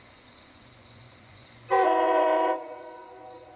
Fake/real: fake